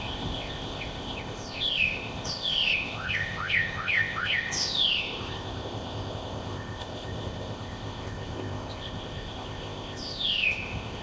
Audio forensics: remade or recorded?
remade